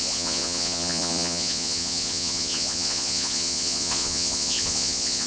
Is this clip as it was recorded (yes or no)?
no